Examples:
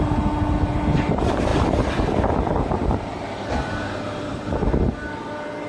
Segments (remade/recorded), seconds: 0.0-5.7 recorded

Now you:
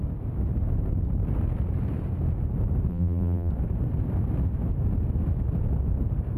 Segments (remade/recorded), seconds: 0.0-2.9 recorded; 2.9-3.5 remade; 3.5-6.4 recorded